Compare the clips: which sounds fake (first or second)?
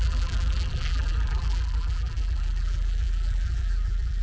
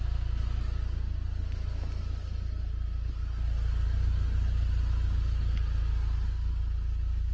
first